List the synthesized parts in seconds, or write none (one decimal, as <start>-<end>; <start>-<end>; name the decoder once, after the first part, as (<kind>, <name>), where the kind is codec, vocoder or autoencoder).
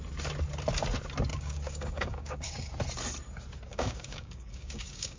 1.3-2.7 (codec, DAC); 3.7-5.2